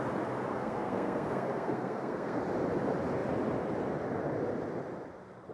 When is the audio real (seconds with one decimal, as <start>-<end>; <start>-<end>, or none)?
0.0-0.5; 2.4-5.5